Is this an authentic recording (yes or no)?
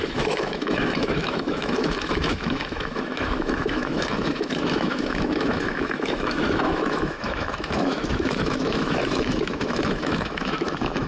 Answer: no